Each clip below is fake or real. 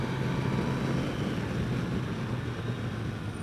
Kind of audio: real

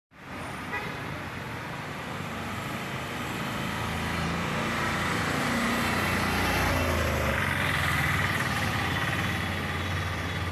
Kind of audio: real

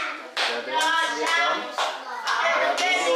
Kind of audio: real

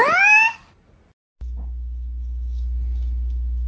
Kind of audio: real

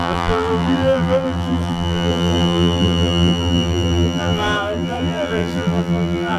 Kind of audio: fake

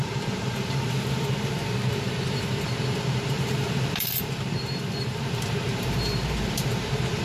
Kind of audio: fake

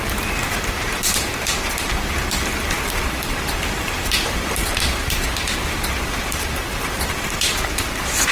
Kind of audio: fake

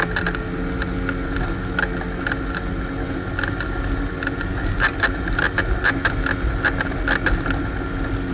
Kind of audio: real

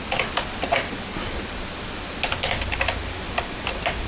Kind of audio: real